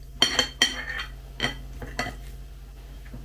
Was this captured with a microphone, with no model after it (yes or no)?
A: yes